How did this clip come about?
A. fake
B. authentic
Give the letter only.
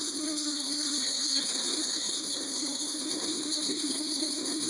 A